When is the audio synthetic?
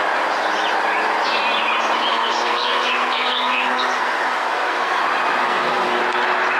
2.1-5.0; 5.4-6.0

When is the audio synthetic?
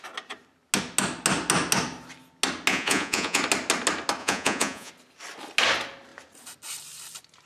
2.7-3.4; 4.2-4.9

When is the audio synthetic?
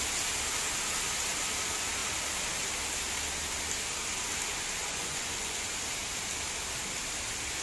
4.8-5.7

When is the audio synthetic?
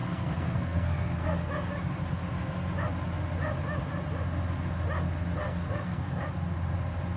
0.0-1.7; 5.4-6.2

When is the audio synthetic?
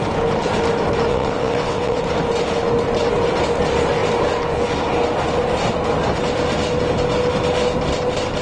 1.1-2.0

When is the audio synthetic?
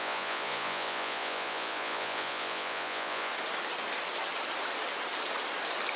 0.0-3.3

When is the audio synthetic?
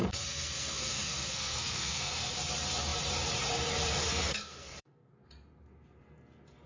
0.0-2.3; 4.0-5.1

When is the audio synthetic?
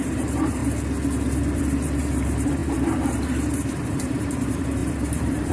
0.0-0.6; 1.6-5.5